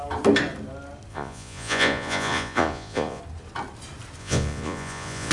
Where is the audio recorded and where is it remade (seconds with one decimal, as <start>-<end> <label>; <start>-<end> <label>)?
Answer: 0.0-1.1 recorded; 1.1-3.2 remade; 3.2-4.2 recorded; 4.2-5.3 remade